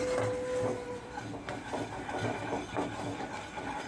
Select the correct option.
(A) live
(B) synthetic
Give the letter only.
A